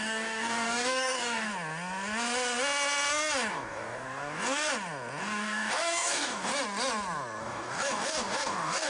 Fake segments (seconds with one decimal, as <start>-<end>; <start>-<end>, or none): 0.0-1.5; 3.5-4.7; 5.2-6.5; 7.4-8.9